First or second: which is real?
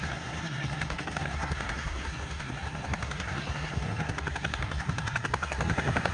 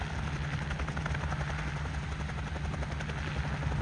second